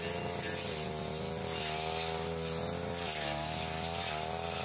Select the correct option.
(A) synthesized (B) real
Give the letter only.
B